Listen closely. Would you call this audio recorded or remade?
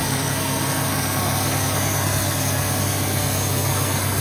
remade